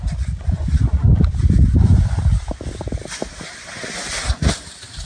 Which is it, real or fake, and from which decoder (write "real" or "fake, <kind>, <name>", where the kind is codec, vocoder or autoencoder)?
real